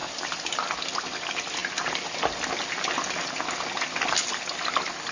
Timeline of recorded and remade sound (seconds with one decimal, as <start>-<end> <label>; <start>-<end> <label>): 0.0-5.1 recorded